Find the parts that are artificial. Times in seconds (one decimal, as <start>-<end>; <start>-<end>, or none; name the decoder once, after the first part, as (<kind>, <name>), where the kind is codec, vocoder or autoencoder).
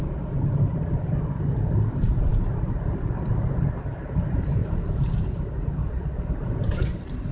none